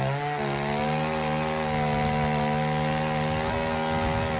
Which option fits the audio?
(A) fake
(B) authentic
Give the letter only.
B